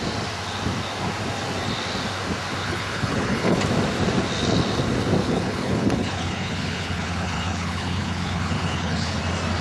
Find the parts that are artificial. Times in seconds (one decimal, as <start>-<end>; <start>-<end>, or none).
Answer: 2.6-3.6; 5.2-9.2